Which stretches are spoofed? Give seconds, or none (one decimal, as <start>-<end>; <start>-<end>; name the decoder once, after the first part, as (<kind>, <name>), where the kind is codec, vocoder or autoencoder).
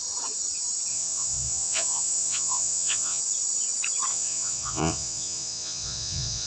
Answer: 0.9-3.2 (vocoder, Vocos); 4.1-6.5